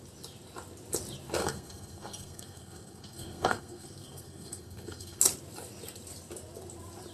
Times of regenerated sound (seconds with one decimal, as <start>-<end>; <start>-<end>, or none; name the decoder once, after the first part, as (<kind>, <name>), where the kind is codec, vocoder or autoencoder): 1.4-5.2 (codec, SNAC)